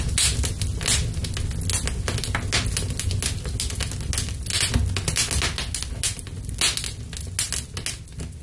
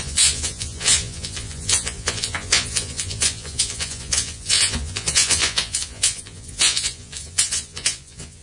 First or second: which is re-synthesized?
second